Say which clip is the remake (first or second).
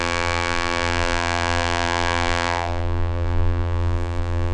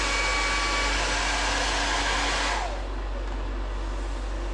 first